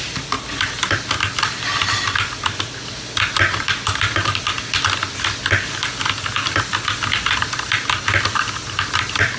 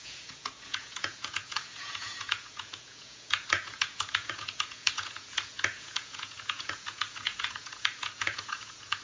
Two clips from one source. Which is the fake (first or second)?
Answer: second